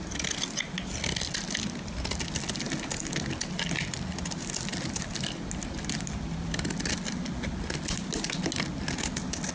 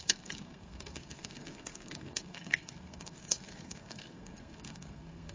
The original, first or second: first